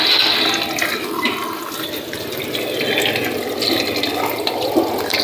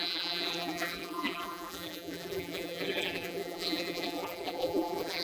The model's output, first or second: second